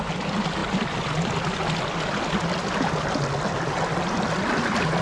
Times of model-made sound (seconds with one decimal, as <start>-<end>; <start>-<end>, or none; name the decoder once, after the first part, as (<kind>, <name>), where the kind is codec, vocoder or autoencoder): none